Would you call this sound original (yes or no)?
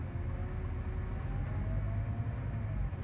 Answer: yes